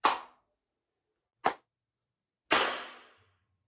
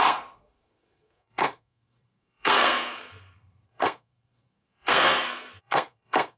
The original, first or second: first